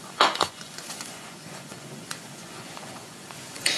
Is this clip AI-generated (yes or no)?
yes